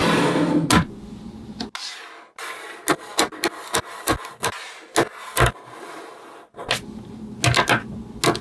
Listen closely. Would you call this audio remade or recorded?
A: recorded